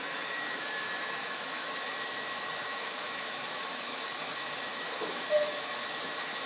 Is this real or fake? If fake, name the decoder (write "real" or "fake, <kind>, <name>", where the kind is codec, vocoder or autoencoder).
fake, autoencoder, DAC-VAE